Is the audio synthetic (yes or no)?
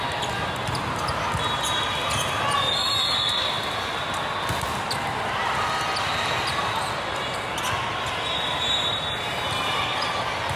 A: no